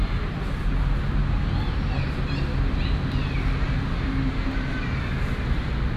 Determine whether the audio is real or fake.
real